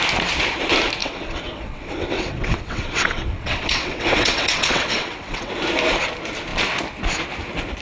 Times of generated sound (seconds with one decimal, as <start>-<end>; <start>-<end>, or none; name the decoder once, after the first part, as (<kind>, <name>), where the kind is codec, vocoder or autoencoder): 1.0-5.5 (vocoder, WaveNeXt)